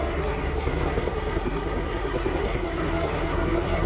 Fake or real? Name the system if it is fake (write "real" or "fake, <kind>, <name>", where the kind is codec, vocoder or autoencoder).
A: fake, codec, SNAC